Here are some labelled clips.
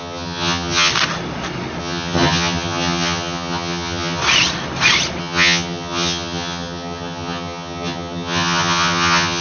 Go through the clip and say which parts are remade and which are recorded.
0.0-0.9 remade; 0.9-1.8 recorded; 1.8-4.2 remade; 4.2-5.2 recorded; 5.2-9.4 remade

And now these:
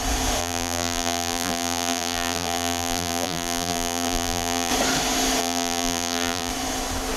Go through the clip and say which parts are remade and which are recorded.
0.0-0.4 recorded; 0.4-4.7 remade; 4.7-5.4 recorded; 5.4-6.5 remade; 6.5-7.2 recorded